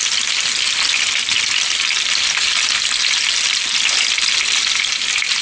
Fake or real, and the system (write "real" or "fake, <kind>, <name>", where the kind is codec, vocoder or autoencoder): real